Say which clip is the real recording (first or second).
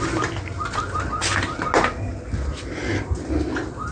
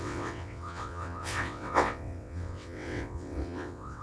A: first